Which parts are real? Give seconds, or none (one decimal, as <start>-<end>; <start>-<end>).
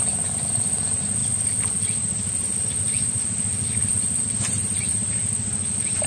0.0-6.1